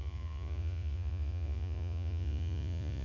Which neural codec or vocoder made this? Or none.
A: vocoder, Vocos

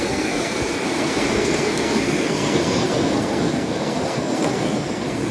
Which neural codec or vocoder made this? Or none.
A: codec, SNAC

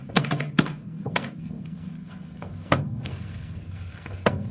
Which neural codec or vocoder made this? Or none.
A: codec, SNAC